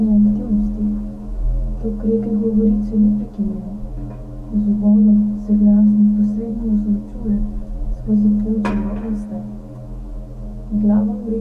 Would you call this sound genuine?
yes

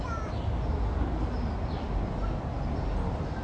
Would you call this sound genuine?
yes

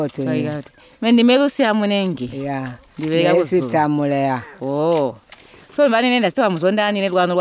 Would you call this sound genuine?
yes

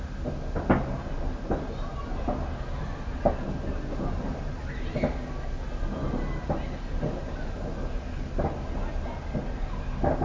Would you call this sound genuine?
yes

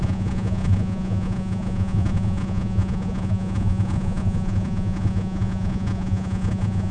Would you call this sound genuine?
no